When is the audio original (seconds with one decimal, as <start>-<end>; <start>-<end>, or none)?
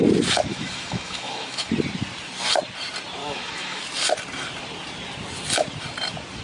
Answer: 0.0-0.5; 1.7-3.2; 3.8-6.4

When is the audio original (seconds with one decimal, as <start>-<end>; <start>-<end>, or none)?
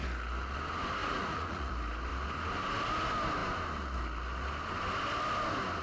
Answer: 0.0-1.0; 1.7-5.8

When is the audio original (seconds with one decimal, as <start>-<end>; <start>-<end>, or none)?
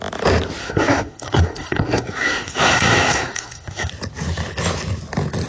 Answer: 0.0-0.6; 3.9-5.5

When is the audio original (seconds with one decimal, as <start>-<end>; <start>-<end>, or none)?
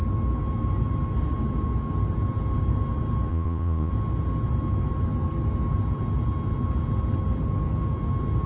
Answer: 0.0-3.3; 3.9-8.5